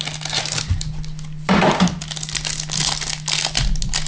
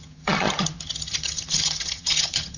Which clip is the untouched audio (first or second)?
first